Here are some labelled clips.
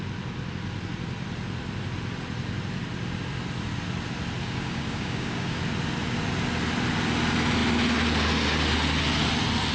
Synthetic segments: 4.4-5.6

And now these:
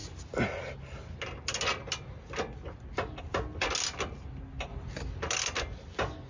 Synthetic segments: none

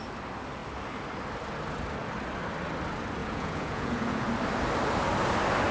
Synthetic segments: 3.2-4.3

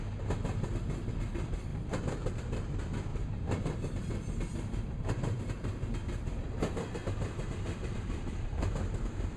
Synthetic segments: 1.7-2.7; 3.1-5.4; 7.0-8.7

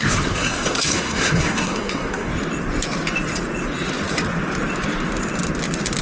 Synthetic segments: 0.0-2.3